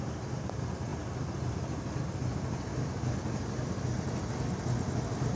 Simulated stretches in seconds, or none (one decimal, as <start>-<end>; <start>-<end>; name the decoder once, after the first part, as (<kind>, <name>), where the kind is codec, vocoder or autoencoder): none